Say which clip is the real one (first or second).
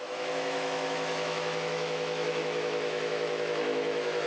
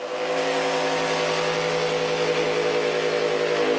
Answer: second